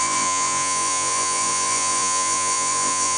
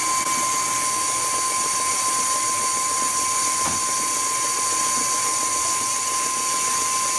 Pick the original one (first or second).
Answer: second